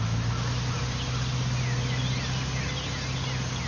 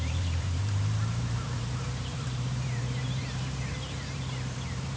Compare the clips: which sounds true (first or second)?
first